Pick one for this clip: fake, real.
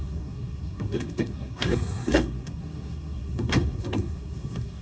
fake